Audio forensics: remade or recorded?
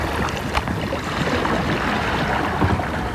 recorded